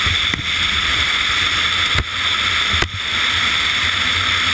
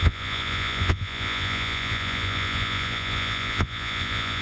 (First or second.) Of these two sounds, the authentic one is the first